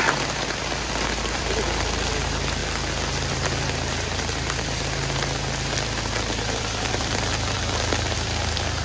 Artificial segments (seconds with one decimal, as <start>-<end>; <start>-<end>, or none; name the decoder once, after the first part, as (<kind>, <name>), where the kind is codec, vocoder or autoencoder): 0.0-2.6 (vocoder, BigVGAN v2); 3.1-8.8